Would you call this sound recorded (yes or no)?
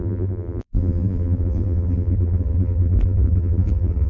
no